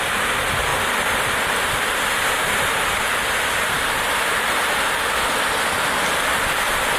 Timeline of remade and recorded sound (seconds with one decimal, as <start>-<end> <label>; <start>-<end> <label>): 0.0-0.7 recorded; 0.7-1.3 remade; 1.3-7.0 recorded